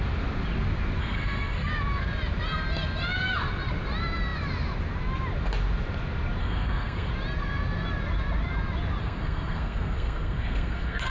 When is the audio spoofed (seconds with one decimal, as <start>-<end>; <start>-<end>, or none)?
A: 1.0-1.7; 6.4-7.1; 9.0-11.1